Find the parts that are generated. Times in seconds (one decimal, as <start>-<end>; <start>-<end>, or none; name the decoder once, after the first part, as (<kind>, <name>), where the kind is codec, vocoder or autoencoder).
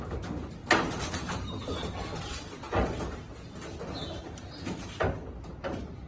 0.6-1.5 (vocoder, BigVGAN v2); 3.7-4.9